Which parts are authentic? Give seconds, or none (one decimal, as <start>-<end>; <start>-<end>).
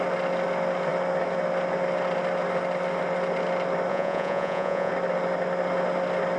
0.0-3.9; 4.9-6.4